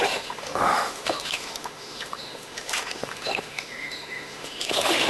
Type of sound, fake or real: fake